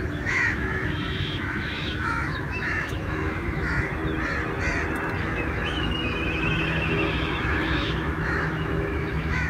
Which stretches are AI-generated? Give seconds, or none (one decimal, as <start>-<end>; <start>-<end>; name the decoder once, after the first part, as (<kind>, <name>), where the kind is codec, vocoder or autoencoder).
0.0-4.0 (autoencoder, DAC-VAE); 5.2-9.5